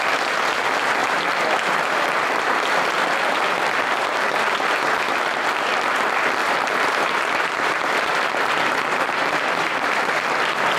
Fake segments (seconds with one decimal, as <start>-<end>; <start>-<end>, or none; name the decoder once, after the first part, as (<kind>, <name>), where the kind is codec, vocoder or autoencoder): 6.4-10.2 (vocoder, BigVGAN v2)